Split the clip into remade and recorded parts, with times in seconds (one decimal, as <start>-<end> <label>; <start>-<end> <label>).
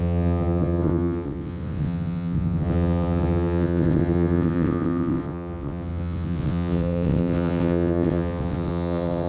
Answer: 0.0-9.3 remade